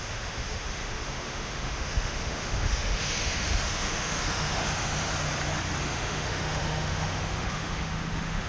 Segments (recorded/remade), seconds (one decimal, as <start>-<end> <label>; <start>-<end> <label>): 0.0-5.1 remade; 5.1-5.8 recorded; 5.8-8.5 remade